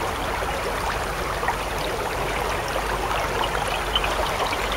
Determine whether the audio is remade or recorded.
recorded